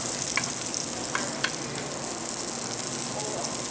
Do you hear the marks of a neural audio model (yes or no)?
no